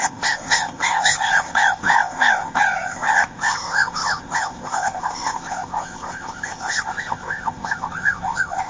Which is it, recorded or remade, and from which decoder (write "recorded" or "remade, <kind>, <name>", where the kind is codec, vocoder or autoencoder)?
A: remade, codec, ZipCodec